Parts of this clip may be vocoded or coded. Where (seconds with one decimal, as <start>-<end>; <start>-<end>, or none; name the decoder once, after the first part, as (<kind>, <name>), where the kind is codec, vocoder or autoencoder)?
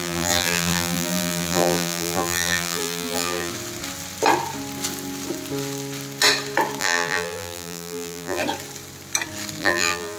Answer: 0.0-3.5 (vocoder, BigVGAN v2); 6.8-8.4; 9.6-10.2